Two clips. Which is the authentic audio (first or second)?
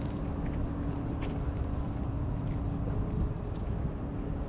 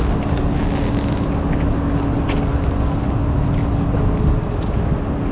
second